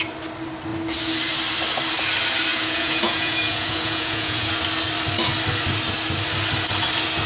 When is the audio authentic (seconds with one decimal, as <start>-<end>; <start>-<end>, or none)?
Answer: 0.0-2.5; 4.5-7.3

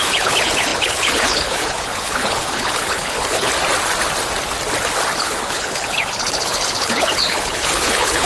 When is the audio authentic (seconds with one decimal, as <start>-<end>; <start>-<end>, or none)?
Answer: 3.5-5.2

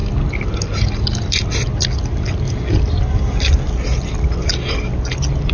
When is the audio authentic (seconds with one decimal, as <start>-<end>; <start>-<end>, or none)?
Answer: 0.0-5.5

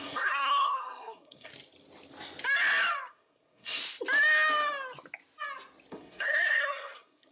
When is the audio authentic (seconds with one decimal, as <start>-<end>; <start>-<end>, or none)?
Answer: 1.5-3.1; 3.8-5.9

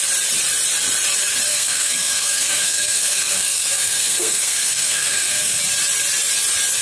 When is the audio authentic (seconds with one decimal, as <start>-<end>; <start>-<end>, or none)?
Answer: 0.0-1.5; 5.6-6.8

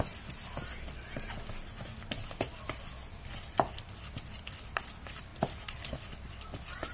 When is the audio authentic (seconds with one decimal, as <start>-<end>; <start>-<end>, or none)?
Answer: 0.0-6.9

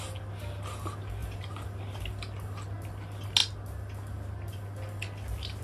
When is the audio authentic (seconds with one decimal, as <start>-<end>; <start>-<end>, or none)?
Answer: 0.0-5.6

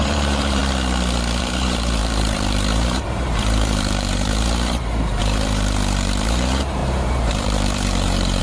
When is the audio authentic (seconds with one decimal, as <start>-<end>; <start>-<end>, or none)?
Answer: 0.6-1.4